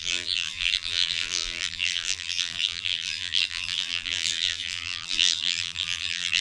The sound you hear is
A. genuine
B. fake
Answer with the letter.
B